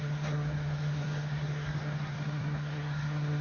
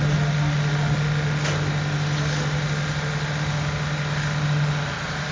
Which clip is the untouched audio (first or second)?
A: second